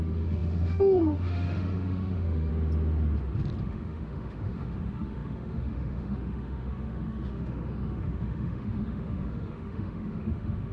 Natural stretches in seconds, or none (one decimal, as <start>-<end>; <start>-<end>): 2.5-3.6